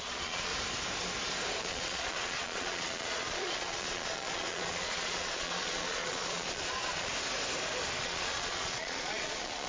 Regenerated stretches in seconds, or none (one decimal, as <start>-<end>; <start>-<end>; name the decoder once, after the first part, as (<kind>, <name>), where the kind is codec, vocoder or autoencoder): 0.0-0.5 (vocoder, Vocos); 1.6-7.1; 8.0-9.7